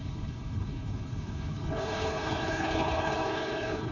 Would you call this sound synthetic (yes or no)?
yes